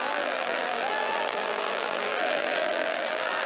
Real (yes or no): no